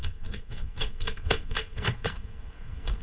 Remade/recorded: remade